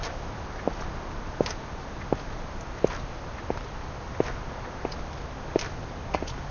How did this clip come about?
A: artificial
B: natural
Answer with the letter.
B